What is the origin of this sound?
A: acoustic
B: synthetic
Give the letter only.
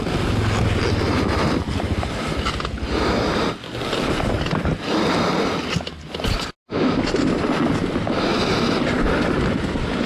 A